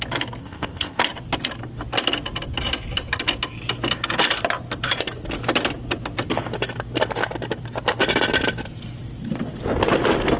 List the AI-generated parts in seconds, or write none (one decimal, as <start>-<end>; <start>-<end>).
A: 0.4-1.0